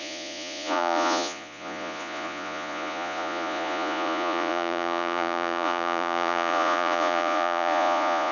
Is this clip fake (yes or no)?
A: yes